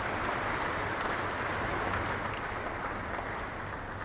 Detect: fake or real real